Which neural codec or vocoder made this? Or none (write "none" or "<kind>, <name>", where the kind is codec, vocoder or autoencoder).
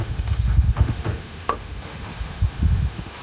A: autoencoder, DAC-VAE